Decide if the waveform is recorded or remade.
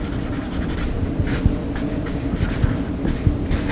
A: recorded